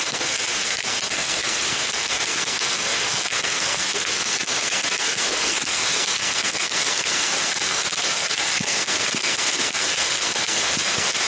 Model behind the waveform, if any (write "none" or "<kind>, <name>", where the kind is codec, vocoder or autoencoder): codec, SNAC